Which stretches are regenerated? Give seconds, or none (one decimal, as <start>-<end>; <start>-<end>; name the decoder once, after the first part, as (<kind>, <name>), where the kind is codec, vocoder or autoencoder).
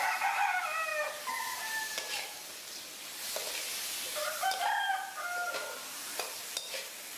6.1-7.2 (vocoder, BigVGAN v2)